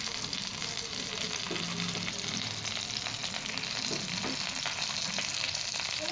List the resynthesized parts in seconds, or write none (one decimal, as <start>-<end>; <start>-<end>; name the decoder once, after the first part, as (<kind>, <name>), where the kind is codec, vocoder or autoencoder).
none

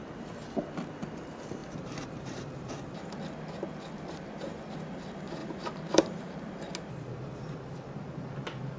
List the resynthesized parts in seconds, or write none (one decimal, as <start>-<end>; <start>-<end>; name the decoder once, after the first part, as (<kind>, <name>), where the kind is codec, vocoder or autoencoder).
1.6-2.7 (vocoder, BigVGAN v2); 5.4-6.2

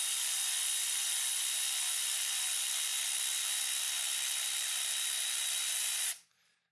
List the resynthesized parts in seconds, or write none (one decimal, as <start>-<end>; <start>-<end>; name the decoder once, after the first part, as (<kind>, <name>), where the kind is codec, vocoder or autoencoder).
0.0-2.9 (vocoder, BigVGAN v2); 3.8-6.7

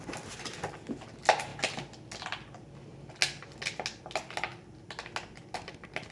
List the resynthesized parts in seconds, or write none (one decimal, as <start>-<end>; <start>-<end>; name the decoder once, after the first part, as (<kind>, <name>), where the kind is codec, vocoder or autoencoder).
none